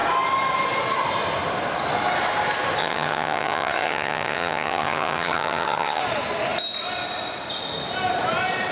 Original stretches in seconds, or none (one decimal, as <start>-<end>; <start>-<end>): 0.0-2.8; 6.0-8.7